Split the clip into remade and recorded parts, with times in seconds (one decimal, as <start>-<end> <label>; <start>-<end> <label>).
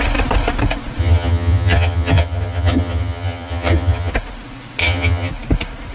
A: 0.0-1.0 recorded; 1.0-4.1 remade; 4.1-4.8 recorded; 4.8-5.3 remade; 5.3-5.9 recorded